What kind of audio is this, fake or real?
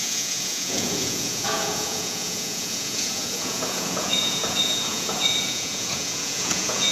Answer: fake